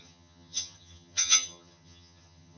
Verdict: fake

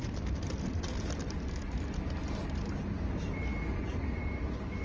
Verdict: real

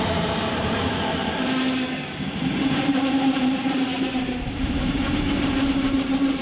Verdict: fake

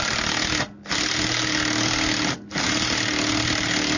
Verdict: real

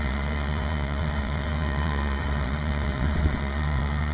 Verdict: fake